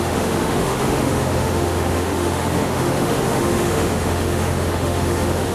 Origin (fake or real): fake